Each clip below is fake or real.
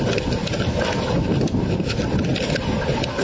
real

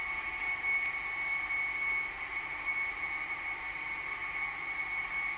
real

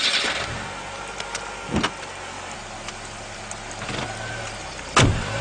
real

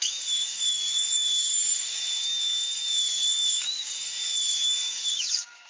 fake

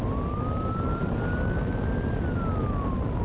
real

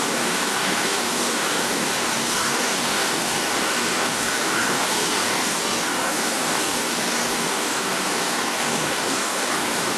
fake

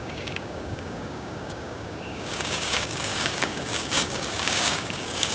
fake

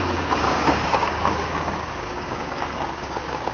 fake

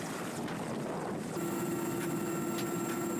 real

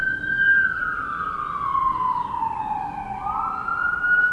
real